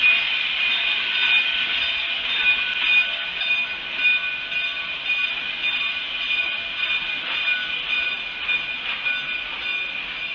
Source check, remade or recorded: recorded